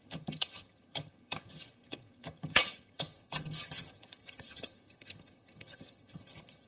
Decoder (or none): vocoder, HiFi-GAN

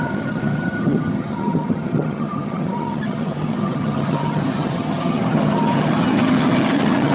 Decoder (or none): vocoder, HiFi-GAN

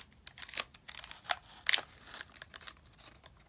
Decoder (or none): none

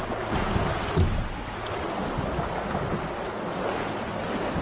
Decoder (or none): none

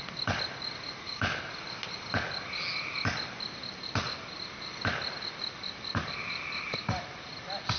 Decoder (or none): none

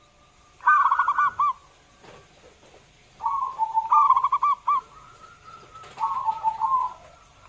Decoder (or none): none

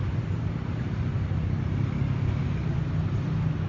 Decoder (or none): none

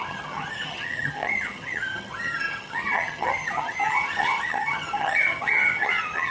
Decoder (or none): vocoder, HiFi-GAN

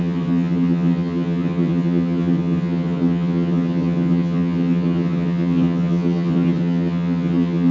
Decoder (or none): vocoder, HiFi-GAN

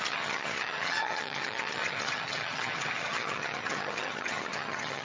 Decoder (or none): vocoder, HiFi-GAN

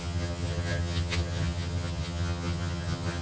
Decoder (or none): vocoder, HiFi-GAN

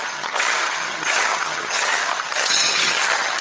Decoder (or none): vocoder, HiFi-GAN